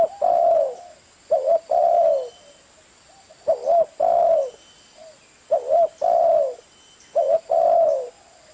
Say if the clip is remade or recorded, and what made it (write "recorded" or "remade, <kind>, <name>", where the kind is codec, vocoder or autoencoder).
recorded